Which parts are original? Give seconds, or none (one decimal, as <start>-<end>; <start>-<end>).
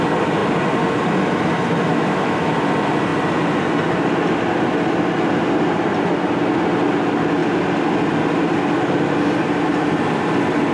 0.0-1.9; 2.5-10.7